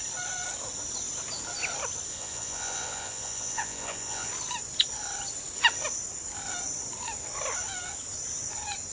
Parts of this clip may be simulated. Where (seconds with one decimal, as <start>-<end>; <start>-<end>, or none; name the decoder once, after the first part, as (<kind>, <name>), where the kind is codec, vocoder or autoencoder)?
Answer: 2.1-4.3 (vocoder, Vocos)